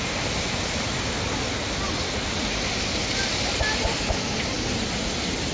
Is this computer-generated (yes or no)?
no